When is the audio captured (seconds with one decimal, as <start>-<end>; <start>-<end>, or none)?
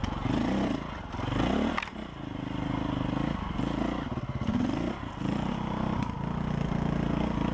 0.0-7.5